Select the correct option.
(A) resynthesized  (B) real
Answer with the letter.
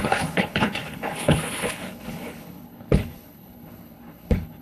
A